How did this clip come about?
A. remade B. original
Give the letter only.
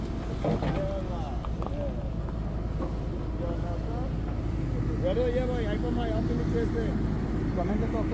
B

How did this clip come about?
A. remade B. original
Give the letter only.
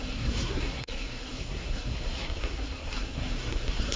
A